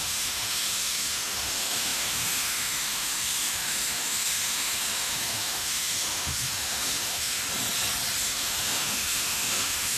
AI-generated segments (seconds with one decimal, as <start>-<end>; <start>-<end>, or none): 0.0-7.4; 8.2-10.0